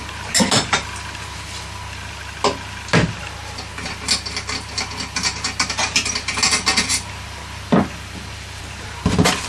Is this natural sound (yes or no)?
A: yes